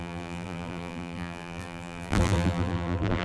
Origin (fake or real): fake